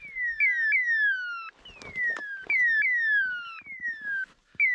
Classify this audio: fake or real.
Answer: real